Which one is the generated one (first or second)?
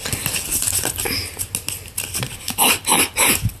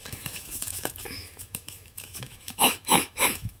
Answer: second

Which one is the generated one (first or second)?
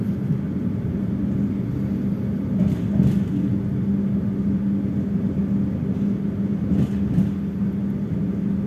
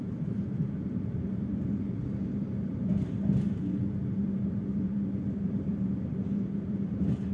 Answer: second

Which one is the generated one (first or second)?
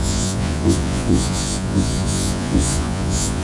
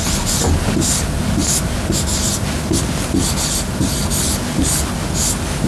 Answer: first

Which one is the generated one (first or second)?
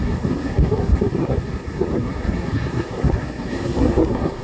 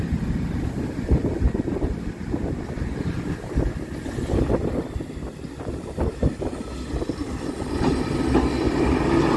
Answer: first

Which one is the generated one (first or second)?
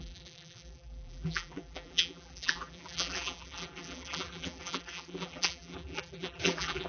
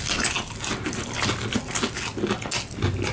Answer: first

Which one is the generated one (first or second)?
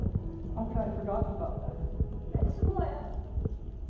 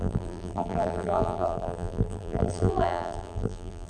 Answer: second